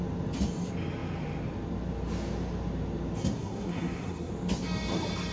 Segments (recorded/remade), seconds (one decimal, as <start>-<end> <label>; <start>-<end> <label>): 0.0-3.2 recorded; 3.2-4.3 remade; 4.3-5.3 recorded